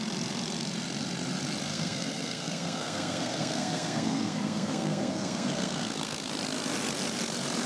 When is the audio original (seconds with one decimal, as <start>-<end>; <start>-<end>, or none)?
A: 0.0-1.7; 6.3-7.7

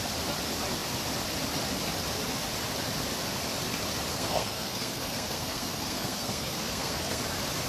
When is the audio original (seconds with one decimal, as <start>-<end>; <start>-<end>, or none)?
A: 0.0-4.1; 7.2-7.7

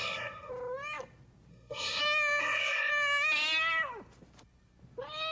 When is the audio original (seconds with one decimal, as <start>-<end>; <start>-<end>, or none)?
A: 0.5-1.5; 2.0-2.4; 2.9-5.3

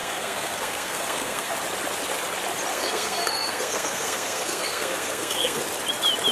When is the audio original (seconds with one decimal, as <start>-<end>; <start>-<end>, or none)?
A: 1.5-2.7; 5.6-6.3

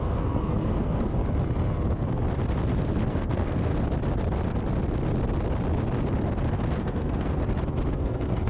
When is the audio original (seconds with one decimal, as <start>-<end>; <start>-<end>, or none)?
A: 1.2-3.1; 3.7-6.8; 7.4-7.9

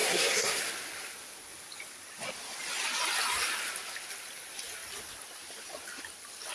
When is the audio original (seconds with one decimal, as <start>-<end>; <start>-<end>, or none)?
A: 0.6-6.5